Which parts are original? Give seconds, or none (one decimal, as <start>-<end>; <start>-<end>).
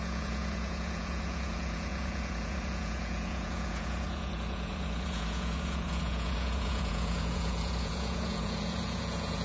none